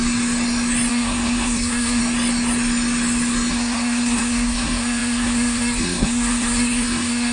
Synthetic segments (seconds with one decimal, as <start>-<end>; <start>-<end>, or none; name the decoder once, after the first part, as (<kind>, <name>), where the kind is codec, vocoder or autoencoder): 0.9-2.0 (codec, SNAC); 3.5-7.3